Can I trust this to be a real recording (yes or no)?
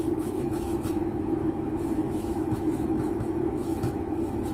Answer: no